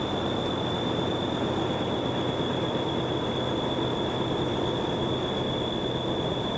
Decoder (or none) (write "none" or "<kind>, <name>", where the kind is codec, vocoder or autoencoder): none